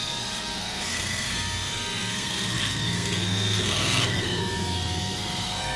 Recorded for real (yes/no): no